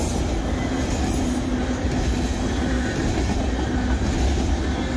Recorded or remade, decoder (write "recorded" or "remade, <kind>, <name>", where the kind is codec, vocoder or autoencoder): recorded